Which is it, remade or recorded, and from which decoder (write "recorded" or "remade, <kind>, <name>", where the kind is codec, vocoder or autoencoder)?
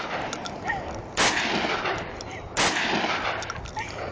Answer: recorded